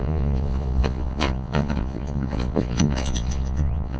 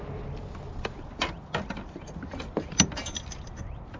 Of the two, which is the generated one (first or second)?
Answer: first